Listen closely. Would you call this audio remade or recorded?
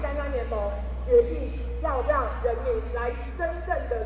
recorded